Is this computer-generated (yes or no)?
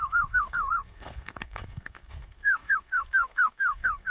yes